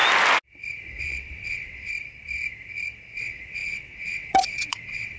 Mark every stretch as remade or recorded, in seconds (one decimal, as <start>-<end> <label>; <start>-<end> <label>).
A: 0.0-1.0 recorded; 1.0-1.9 remade; 1.9-3.2 recorded; 3.2-5.2 remade